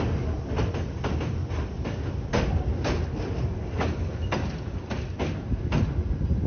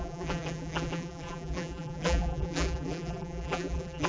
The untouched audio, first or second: first